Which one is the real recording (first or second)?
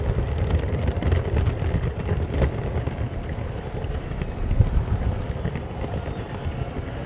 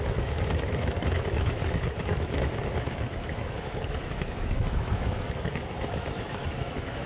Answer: first